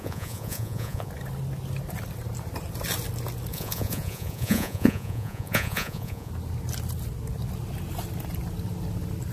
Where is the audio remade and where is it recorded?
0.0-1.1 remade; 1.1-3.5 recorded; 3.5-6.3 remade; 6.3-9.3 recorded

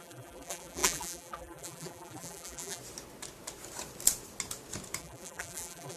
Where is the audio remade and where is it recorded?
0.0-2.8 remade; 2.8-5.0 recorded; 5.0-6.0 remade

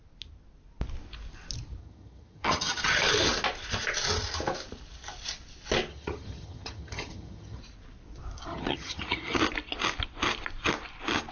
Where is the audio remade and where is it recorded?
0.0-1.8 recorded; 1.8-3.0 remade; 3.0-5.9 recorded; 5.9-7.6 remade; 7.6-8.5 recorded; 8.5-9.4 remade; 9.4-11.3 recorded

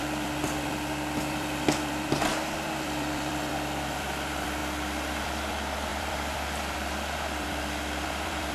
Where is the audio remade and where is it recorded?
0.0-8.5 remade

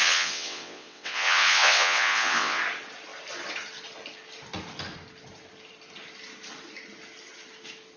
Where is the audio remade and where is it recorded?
0.0-2.6 remade; 2.6-8.0 recorded

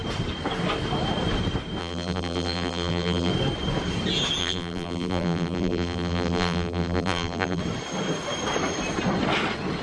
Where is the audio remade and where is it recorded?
0.0-1.8 recorded; 1.8-3.3 remade; 3.3-4.4 recorded; 4.4-7.6 remade; 7.6-9.8 recorded